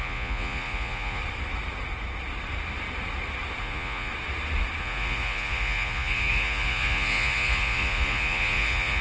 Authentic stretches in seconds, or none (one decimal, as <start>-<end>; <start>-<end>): 1.2-3.6; 4.1-4.8